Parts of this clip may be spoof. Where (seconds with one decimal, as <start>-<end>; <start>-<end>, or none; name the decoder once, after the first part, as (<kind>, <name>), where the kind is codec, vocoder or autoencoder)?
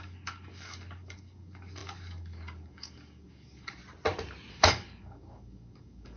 0.0-3.8 (codec, DAC); 4.5-6.2